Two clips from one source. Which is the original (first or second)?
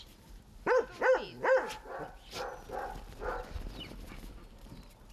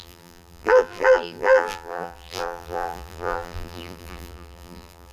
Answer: first